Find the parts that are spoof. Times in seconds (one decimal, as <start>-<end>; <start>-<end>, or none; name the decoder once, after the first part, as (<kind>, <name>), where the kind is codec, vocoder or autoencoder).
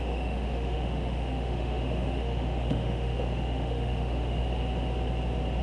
0.0-4.4 (autoencoder, DAC-VAE)